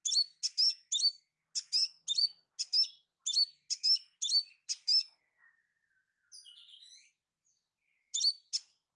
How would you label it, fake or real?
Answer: real